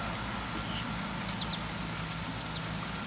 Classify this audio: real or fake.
real